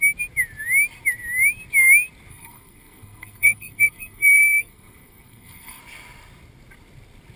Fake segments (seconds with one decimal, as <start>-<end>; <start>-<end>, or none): 2.3-5.8